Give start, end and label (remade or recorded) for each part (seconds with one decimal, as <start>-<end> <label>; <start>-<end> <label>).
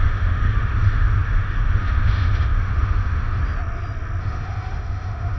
0.0-3.4 remade; 3.4-4.2 recorded; 4.2-5.4 remade